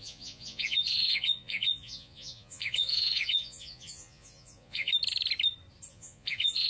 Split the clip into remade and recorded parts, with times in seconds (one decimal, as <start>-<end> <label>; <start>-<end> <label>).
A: 0.0-4.9 remade; 4.9-5.9 recorded; 5.9-6.7 remade